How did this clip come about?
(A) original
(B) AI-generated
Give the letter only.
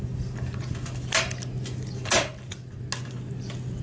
A